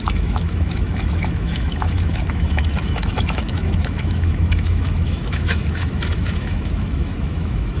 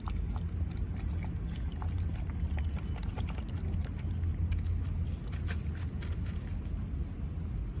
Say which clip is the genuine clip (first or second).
second